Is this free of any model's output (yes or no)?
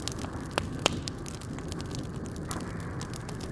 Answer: yes